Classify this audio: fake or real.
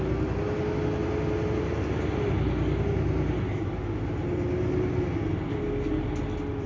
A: real